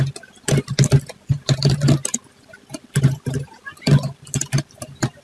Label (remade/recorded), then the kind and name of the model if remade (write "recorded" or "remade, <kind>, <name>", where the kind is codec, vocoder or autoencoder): recorded